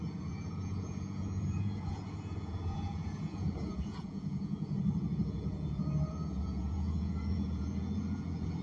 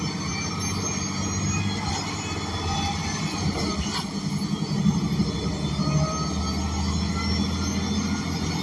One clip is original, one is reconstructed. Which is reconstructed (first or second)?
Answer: first